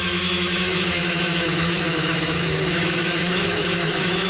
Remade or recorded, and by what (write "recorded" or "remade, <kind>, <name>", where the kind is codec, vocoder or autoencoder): remade, autoencoder, DAC-VAE